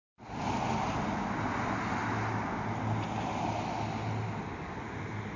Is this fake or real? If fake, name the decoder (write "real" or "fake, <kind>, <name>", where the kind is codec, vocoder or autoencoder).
real